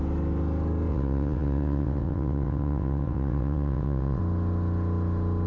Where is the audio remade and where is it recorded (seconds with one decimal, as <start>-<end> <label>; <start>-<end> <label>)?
0.0-0.9 recorded; 0.9-4.2 remade; 4.2-5.5 recorded